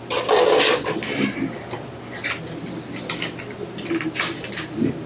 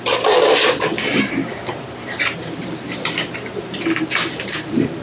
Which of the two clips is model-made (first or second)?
second